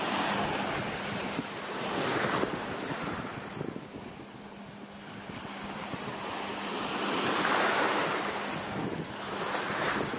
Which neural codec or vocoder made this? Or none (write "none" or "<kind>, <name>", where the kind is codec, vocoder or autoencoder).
none